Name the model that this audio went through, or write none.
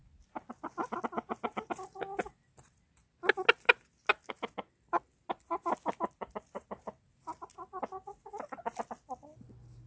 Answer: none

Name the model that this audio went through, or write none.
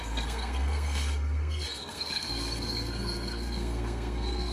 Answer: codec, SNAC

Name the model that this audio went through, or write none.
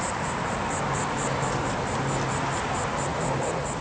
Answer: none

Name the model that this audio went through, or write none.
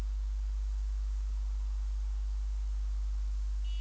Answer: none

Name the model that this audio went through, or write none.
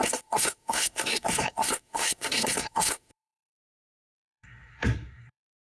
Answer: codec, SNAC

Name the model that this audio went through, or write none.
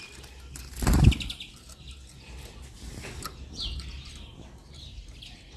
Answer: none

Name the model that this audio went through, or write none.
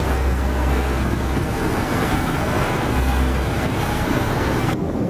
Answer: codec, SNAC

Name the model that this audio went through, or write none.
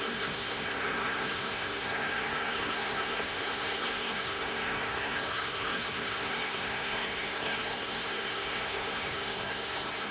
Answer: codec, SNAC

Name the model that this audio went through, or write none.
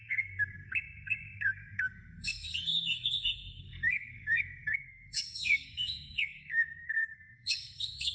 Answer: codec, SNAC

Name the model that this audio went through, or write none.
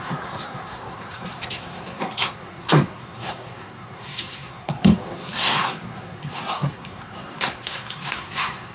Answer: codec, SNAC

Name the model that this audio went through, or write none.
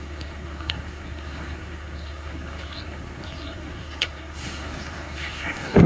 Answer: codec, SNAC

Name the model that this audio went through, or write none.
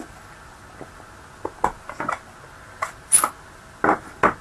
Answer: none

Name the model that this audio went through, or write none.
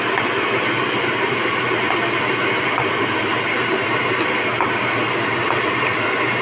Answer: none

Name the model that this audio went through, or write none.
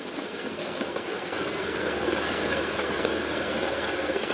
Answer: codec, SNAC